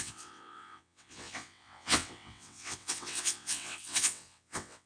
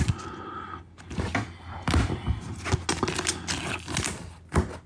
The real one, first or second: second